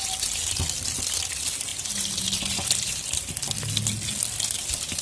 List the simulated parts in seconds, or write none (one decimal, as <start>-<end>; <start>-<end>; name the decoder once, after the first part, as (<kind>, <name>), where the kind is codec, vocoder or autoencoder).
none